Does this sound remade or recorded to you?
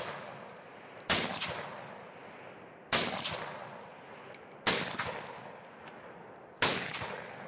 recorded